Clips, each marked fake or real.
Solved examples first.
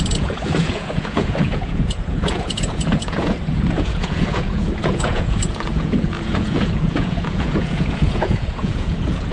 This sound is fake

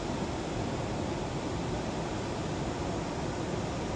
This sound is real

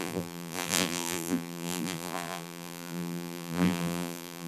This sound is fake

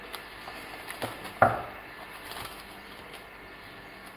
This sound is fake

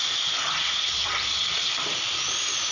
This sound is real